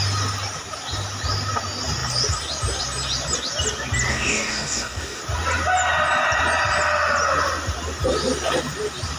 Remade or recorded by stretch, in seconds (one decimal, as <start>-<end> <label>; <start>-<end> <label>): 0.0-4.1 recorded; 4.1-5.2 remade; 5.2-9.2 recorded